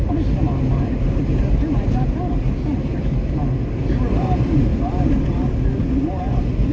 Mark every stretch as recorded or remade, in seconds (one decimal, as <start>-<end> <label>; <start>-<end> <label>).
0.0-6.7 recorded